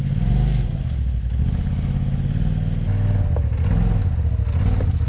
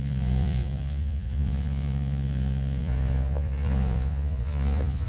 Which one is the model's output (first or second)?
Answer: second